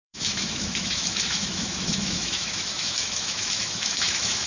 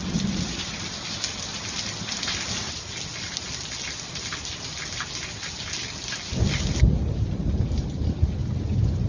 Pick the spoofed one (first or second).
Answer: first